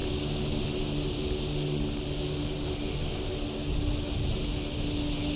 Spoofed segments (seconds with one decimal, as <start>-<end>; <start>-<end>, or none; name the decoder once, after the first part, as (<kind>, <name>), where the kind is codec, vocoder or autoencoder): none